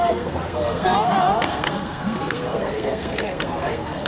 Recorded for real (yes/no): no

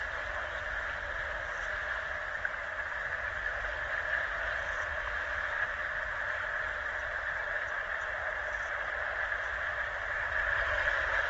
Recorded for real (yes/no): yes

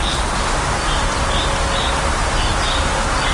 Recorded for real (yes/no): yes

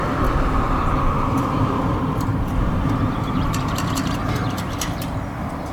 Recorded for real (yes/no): no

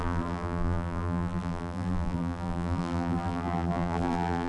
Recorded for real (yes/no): no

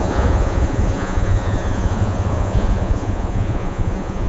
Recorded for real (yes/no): no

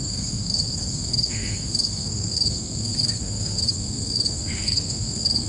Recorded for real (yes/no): no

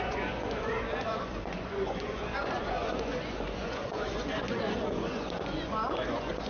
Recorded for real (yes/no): no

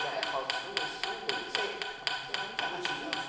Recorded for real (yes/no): yes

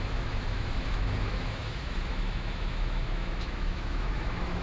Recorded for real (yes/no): no